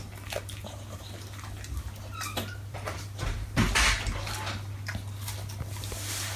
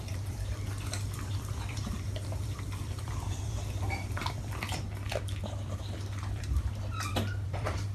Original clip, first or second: first